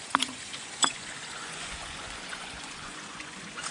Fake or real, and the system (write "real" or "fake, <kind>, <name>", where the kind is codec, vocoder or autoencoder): fake, vocoder, Vocos